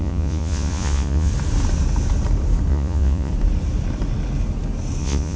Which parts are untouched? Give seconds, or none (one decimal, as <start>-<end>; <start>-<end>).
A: 1.3-2.7; 3.3-5.0